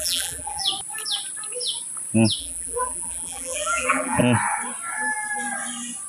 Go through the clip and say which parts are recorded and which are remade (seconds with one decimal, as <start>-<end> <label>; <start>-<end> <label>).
0.0-0.6 remade; 0.6-2.4 recorded; 2.4-4.2 remade; 4.2-6.1 recorded